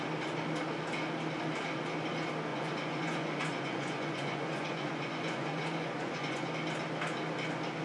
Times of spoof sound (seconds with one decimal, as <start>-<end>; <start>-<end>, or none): 2.5-6.5